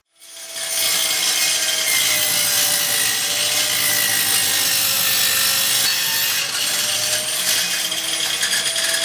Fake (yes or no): no